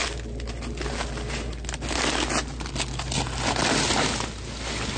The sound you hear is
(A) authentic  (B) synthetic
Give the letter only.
A